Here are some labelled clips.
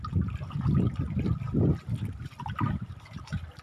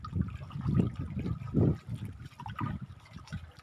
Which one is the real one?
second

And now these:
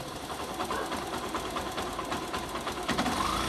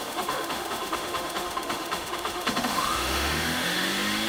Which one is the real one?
first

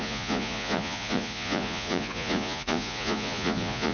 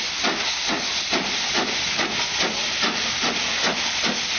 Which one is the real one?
second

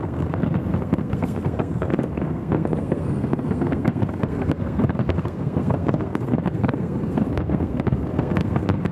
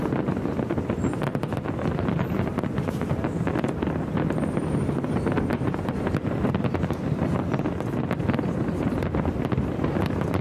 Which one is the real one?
second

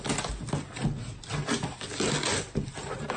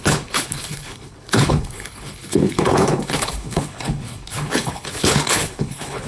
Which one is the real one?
first